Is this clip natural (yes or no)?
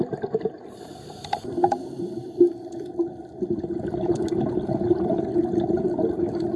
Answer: yes